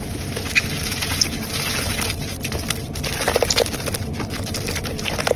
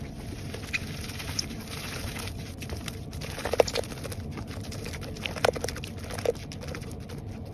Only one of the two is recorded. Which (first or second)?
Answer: first